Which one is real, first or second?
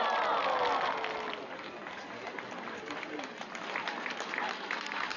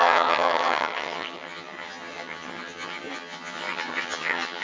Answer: first